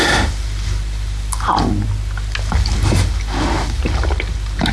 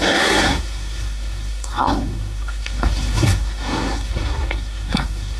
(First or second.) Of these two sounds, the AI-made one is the second